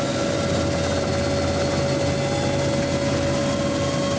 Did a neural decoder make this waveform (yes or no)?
no